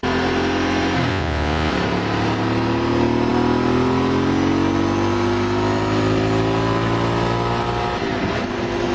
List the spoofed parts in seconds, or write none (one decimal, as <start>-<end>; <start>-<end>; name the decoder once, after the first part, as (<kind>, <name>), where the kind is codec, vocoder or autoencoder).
1.1-1.7 (vocoder, Vocos)